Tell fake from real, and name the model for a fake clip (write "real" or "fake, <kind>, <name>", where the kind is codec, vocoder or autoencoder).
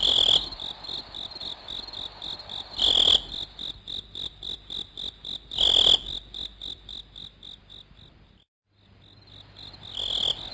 real